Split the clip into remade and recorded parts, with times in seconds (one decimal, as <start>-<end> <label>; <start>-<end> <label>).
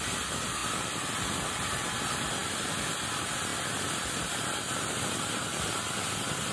0.0-6.5 recorded